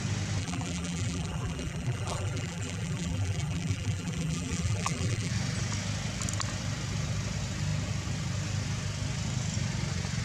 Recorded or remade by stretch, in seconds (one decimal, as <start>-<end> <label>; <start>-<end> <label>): 0.0-0.4 recorded; 0.4-5.3 remade; 5.3-10.2 recorded